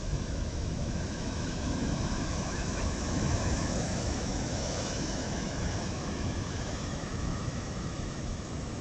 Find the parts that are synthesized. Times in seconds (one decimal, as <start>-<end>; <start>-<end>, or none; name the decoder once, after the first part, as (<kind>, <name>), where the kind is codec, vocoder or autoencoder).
0.0-8.8 (autoencoder, DAC-VAE)